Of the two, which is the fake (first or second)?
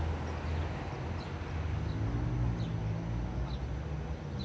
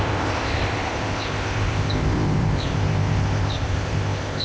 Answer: second